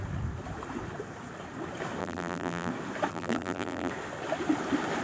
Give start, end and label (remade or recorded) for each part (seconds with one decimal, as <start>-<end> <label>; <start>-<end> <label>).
0.0-2.0 recorded; 2.0-2.7 remade; 2.7-3.1 recorded; 3.1-3.9 remade; 3.9-5.0 recorded